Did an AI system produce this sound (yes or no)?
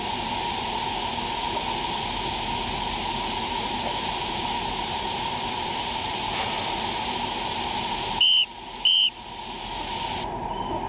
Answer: no